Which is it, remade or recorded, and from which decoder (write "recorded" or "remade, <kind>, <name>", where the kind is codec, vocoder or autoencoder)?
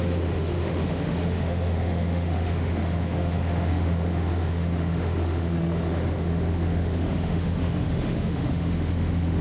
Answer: remade, autoencoder, DAC-VAE